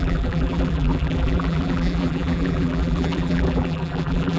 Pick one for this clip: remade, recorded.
remade